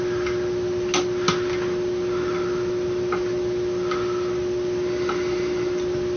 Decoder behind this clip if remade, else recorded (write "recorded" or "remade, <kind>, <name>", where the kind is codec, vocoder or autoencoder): recorded